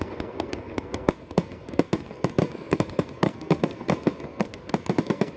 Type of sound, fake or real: fake